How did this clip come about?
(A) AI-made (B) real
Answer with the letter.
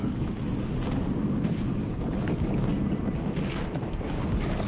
B